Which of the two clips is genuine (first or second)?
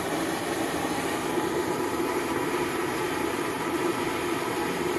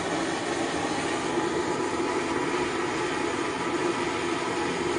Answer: second